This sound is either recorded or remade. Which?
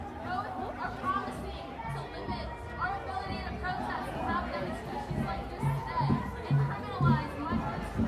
recorded